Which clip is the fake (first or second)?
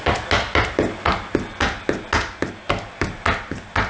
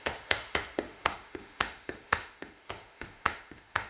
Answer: second